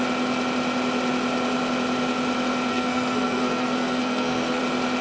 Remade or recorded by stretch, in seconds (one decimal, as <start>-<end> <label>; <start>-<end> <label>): 0.0-2.7 recorded; 2.7-4.6 remade; 4.6-5.0 recorded